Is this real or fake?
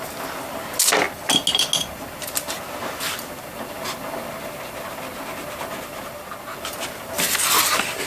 real